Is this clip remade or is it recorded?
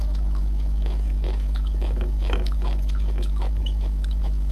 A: remade